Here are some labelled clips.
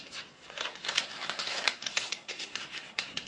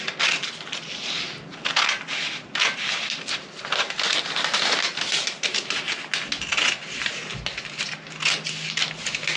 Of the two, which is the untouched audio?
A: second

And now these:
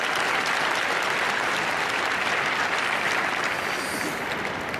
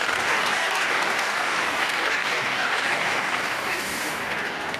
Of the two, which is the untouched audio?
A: first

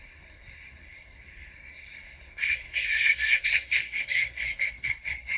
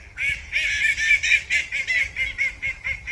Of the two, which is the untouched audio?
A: second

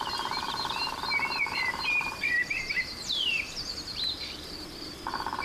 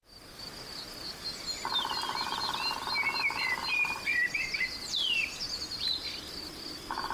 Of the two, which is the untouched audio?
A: second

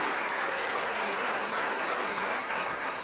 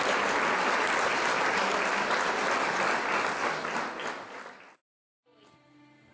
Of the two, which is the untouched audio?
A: second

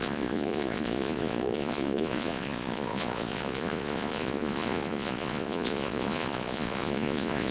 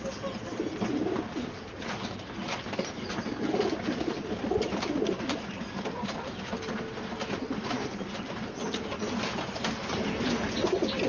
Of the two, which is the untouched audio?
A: second